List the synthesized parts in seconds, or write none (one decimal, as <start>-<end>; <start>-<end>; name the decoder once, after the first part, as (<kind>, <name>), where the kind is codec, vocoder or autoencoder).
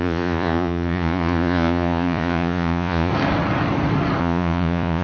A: 0.0-3.1 (vocoder, Vocos); 4.2-5.0